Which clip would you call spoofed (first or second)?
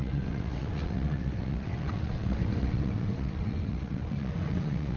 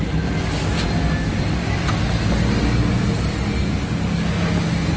first